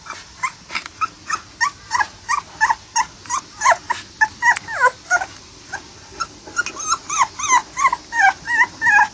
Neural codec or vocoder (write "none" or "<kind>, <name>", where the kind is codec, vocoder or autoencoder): none